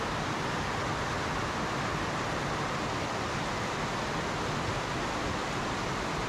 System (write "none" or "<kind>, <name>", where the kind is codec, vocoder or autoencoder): none